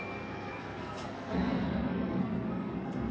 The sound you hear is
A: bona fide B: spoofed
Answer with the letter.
B